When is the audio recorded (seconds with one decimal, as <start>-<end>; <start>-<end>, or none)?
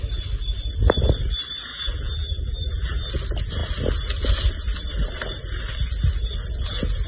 0.0-1.7; 3.1-7.1